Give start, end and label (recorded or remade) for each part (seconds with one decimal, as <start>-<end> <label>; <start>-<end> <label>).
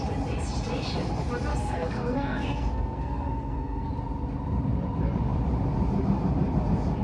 0.0-1.5 recorded; 1.5-3.9 remade; 3.9-7.0 recorded